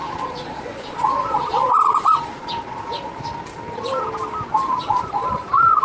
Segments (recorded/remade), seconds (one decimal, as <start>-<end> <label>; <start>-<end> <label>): 0.0-2.9 remade; 2.9-4.7 recorded; 4.7-5.8 remade